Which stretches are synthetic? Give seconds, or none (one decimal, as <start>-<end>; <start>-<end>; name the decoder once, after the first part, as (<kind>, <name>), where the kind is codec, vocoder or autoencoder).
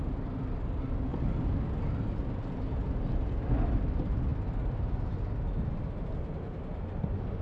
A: none